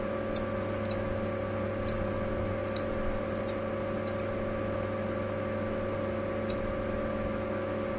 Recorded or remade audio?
recorded